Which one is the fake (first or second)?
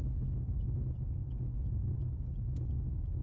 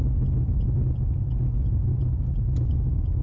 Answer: first